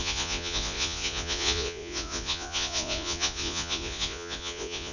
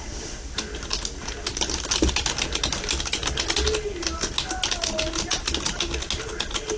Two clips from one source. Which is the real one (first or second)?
second